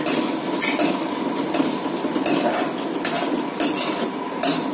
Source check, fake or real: real